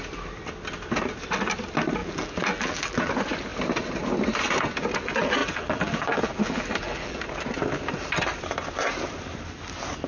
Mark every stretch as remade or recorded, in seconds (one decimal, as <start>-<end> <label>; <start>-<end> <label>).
0.0-2.0 recorded; 2.0-3.1 remade; 3.1-5.4 recorded; 5.4-7.2 remade; 7.2-10.1 recorded